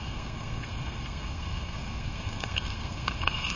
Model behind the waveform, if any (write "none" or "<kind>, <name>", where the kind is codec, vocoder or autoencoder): codec, SNAC